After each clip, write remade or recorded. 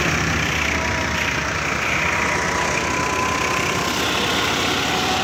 recorded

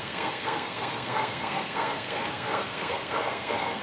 remade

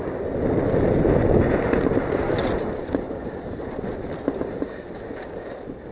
recorded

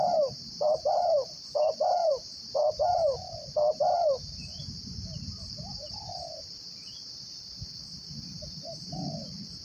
remade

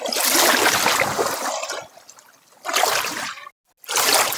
recorded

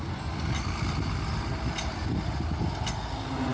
recorded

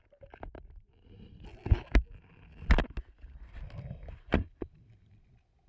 recorded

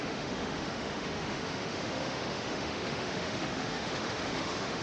remade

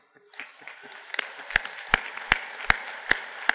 recorded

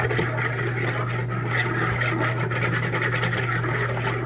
recorded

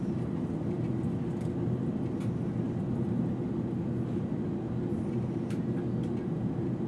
recorded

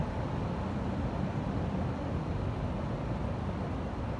recorded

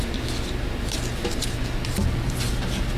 recorded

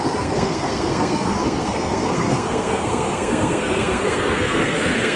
remade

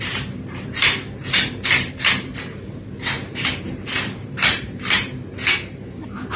remade